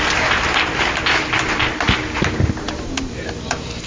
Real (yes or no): no